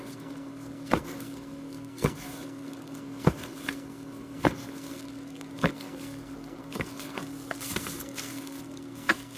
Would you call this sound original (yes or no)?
no